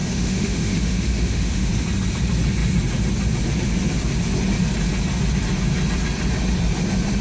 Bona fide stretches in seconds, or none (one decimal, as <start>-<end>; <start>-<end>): 1.7-7.2